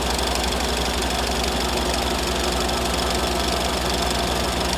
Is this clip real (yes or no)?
yes